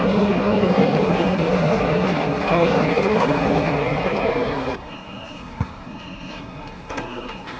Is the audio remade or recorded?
remade